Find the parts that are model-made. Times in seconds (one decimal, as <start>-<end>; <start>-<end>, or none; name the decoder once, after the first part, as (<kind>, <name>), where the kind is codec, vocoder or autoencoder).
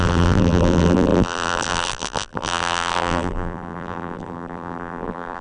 0.0-5.4 (vocoder, BigVGAN v2)